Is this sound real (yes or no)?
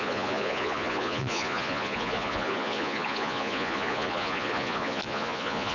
no